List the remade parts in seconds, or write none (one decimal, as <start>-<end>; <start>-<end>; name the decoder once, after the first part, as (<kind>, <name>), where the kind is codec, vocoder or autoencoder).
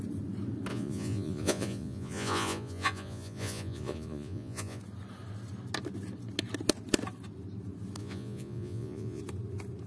0.7-4.8 (vocoder, Vocos); 8.0-9.2